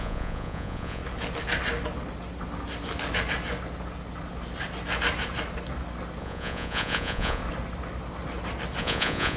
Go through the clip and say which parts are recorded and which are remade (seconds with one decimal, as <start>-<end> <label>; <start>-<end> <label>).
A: 0.0-1.0 remade; 1.0-6.2 recorded; 6.2-7.4 remade; 7.4-8.8 recorded; 8.8-9.4 remade